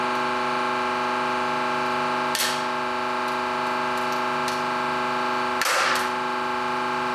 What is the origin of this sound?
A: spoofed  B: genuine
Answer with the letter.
B